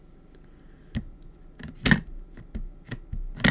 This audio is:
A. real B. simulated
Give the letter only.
A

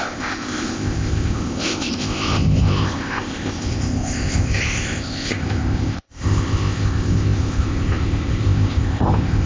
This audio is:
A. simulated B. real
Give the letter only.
A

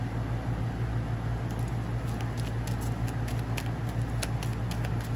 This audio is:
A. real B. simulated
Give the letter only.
A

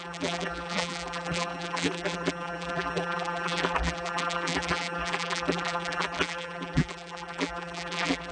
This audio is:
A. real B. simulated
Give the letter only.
B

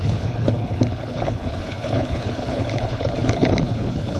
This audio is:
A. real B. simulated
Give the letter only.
B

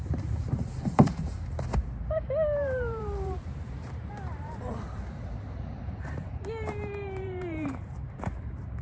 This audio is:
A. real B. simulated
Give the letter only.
B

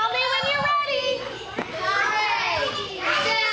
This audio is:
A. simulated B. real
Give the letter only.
B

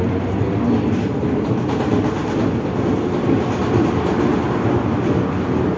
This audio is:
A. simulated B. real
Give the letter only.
B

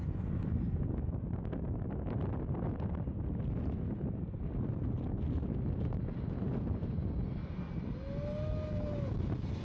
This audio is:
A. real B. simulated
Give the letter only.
A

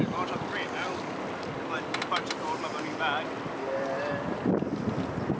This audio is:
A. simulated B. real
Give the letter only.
B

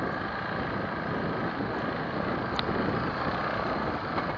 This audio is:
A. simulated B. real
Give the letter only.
B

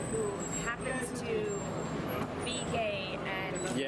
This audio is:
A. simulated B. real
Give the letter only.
B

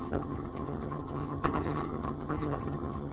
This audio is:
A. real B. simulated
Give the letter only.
B